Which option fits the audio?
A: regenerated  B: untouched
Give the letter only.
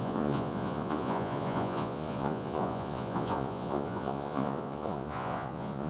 A